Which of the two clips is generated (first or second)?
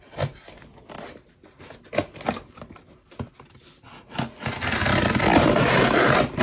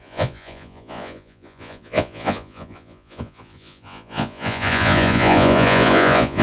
second